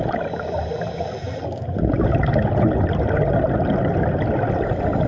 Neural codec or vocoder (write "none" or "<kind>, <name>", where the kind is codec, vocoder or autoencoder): none